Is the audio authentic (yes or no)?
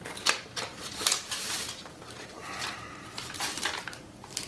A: no